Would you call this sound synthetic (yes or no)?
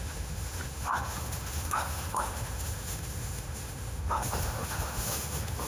yes